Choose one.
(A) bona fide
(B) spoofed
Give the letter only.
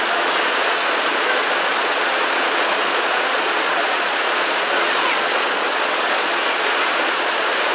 B